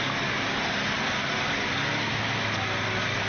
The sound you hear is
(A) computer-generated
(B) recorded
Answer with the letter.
B